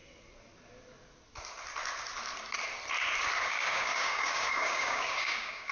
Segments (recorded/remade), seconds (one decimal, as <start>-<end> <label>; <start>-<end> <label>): 0.0-3.4 recorded; 3.4-5.7 remade